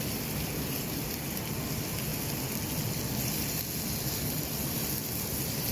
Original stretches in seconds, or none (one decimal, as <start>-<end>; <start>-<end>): 0.0-5.7